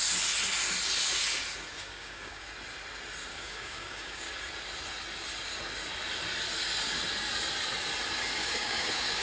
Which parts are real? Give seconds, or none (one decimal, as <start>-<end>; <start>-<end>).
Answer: 0.0-1.9; 2.5-3.3; 4.3-8.4